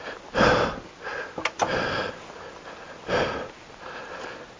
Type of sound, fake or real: real